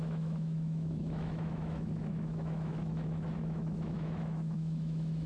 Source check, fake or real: fake